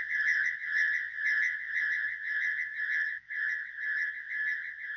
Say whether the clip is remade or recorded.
remade